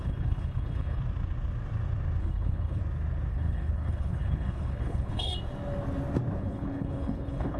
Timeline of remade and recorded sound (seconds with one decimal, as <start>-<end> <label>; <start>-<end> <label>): 0.0-1.0 remade; 1.0-2.2 recorded; 2.2-2.8 remade; 2.8-3.3 recorded; 3.3-5.3 remade; 5.3-6.4 recorded; 6.4-7.6 remade